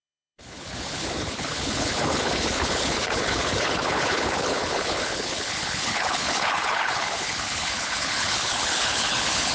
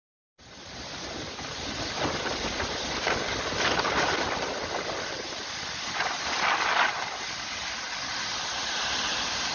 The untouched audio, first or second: second